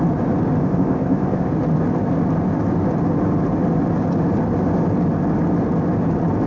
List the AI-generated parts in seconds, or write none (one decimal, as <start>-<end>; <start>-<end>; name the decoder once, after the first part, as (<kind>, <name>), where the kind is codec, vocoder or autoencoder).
0.6-1.5 (codec, ZipCodec)